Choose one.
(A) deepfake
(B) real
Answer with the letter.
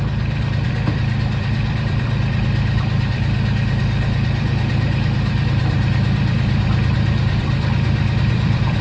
A